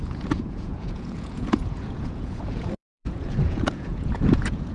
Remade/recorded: remade